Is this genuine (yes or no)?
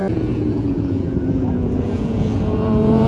no